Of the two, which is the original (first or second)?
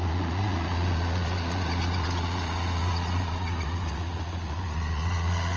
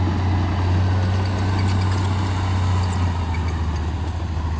second